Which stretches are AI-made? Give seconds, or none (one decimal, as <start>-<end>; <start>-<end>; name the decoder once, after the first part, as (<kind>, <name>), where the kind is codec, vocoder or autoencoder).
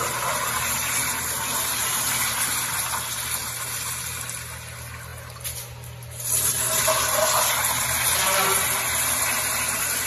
1.8-2.8 (vocoder, BigVGAN v2); 3.4-4.0